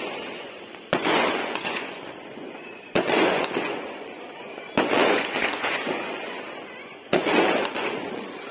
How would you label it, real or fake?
fake